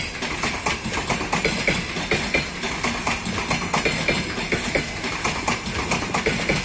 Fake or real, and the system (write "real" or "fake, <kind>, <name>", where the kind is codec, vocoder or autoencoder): real